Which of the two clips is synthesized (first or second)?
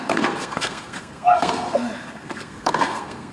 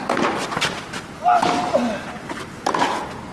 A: first